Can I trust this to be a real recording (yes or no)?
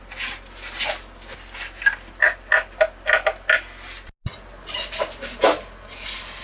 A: yes